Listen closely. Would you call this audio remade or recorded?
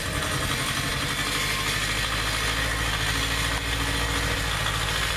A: recorded